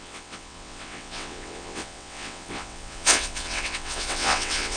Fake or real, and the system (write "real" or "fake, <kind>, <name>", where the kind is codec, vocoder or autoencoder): fake, vocoder, WaveNeXt